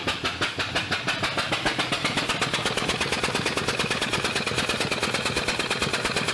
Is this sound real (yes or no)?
yes